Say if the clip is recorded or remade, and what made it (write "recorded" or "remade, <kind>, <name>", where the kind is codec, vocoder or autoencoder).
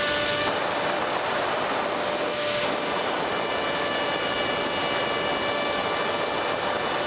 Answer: recorded